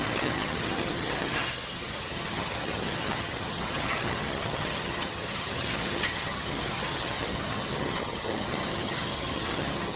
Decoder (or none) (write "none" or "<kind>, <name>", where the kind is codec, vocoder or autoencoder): vocoder, HiFi-GAN